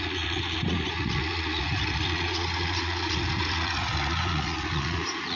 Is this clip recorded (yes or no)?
no